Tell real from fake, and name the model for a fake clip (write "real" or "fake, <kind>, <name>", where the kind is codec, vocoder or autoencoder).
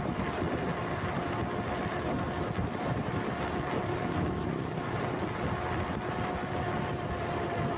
real